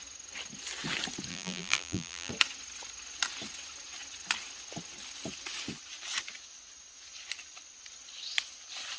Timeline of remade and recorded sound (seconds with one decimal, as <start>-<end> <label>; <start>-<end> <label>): 0.0-1.3 recorded; 1.3-2.3 remade; 2.3-9.0 recorded